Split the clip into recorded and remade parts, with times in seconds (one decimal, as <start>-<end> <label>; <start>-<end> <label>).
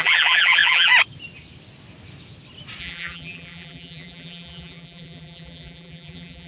0.0-0.9 remade; 0.9-2.8 recorded; 2.8-6.5 remade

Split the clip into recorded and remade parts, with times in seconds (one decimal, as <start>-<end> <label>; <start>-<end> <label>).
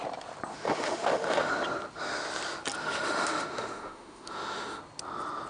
0.0-0.5 recorded; 0.5-1.5 remade; 1.5-2.8 recorded; 2.8-4.8 remade; 4.8-5.5 recorded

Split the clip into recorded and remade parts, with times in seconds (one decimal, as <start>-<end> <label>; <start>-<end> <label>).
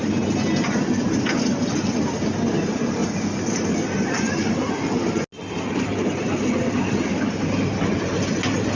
0.0-3.0 recorded; 3.0-4.7 remade; 4.7-8.8 recorded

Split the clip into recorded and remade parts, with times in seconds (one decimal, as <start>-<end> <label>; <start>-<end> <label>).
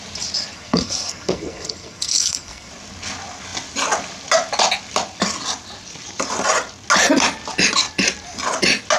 0.0-0.5 recorded; 0.5-2.7 remade; 2.7-9.0 recorded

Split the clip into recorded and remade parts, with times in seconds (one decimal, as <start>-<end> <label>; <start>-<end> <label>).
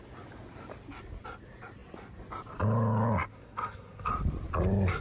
0.0-3.3 recorded; 3.3-4.1 remade; 4.1-5.0 recorded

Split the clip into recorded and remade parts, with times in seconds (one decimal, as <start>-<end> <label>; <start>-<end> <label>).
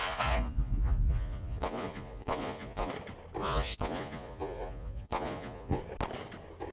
0.0-2.9 remade; 2.9-3.4 recorded; 3.4-5.8 remade; 5.8-6.7 recorded